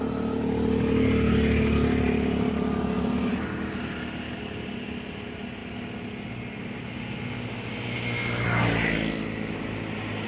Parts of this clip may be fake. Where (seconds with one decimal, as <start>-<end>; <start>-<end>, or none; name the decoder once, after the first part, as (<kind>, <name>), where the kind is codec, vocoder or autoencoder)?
none